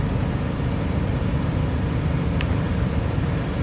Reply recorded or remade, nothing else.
recorded